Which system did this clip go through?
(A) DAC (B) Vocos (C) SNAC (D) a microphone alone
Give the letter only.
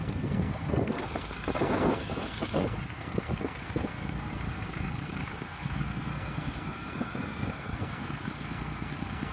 C